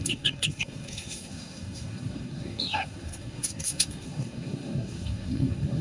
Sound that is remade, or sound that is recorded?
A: remade